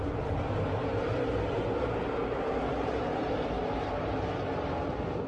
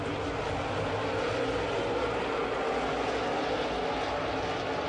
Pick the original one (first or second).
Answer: second